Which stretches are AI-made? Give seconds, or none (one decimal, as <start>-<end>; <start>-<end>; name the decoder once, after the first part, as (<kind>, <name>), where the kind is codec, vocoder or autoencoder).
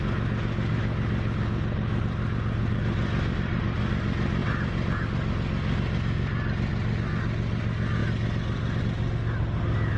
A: 4.4-5.0 (vocoder, BigVGAN v2)